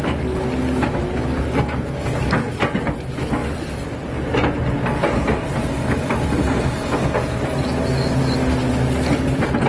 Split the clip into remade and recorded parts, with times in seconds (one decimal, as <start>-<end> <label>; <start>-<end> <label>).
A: 0.0-9.7 recorded